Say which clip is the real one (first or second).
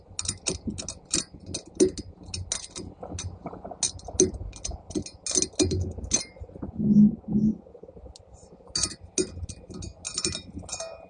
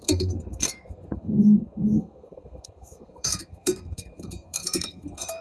first